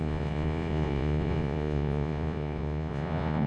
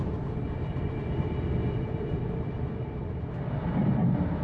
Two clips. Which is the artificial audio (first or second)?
first